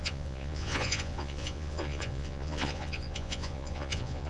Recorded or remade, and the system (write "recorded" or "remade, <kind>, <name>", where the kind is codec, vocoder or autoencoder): remade, vocoder, Vocos